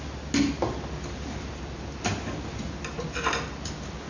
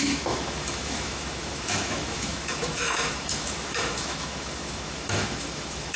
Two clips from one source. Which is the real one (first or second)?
first